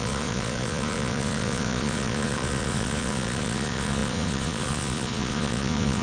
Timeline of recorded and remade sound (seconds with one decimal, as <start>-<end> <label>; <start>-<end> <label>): 0.0-6.0 remade